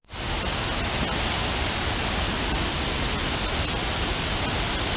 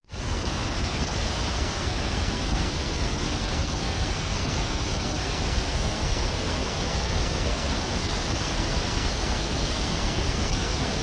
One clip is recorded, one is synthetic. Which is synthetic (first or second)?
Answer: second